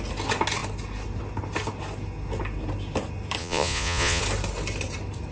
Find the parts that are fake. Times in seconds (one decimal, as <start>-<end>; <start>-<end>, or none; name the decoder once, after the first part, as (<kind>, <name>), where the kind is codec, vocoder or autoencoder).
3.4-4.2 (vocoder, Vocos)